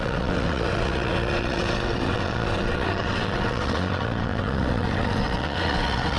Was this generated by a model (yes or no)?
yes